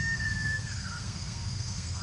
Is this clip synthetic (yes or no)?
yes